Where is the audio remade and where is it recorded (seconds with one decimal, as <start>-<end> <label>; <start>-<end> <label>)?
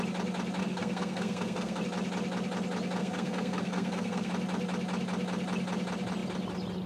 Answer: 0.0-0.6 recorded; 0.6-1.8 remade; 1.8-3.0 recorded; 3.0-4.3 remade; 4.3-6.9 recorded